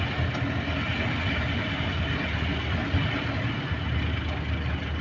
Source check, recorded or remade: recorded